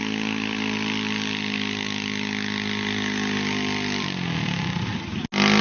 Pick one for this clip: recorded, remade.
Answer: recorded